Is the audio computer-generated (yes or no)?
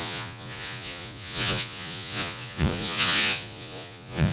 yes